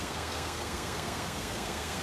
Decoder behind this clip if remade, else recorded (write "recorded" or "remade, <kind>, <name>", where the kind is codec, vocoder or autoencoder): remade, codec, SNAC